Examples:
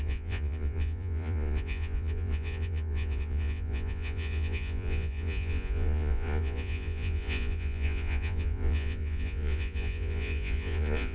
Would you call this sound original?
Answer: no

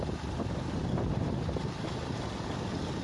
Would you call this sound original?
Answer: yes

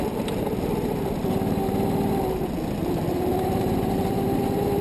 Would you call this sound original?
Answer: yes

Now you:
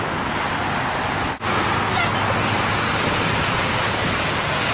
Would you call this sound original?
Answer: yes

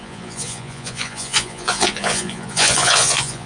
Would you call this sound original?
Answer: no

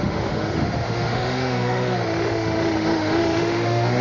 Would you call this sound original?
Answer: no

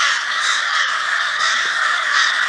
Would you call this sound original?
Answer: no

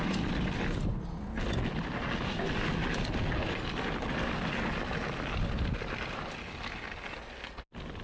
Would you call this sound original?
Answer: yes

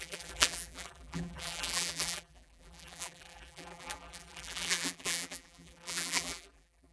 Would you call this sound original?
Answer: no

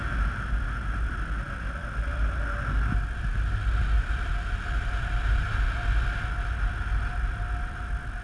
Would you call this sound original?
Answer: yes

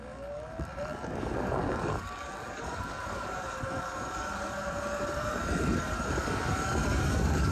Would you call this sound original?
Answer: no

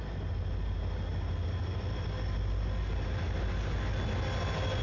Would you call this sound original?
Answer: yes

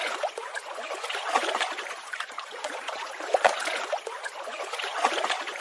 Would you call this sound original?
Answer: no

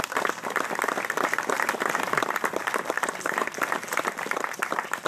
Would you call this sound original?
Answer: yes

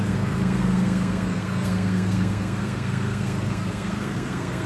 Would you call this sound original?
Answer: no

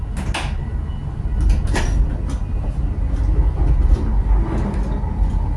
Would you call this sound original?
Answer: yes